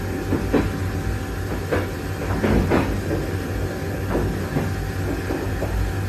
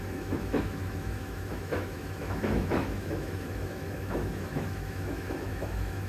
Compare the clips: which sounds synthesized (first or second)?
second